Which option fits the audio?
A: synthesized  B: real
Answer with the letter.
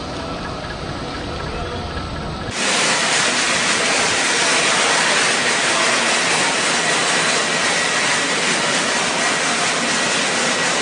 B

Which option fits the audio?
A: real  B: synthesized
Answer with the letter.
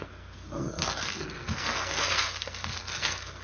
B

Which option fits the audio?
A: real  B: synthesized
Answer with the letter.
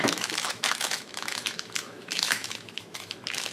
B